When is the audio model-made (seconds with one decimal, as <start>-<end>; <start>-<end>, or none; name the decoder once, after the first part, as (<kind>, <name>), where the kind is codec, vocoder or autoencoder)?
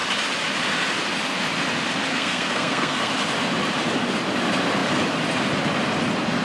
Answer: 2.1-3.1 (codec, SNAC)